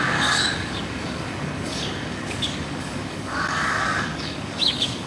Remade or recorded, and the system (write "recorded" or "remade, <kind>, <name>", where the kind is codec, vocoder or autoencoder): remade, codec, DAC